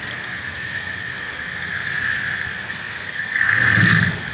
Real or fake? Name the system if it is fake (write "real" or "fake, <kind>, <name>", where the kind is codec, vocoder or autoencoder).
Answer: fake, codec, SNAC